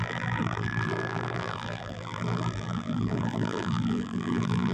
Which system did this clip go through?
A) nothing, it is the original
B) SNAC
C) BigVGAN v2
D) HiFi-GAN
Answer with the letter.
C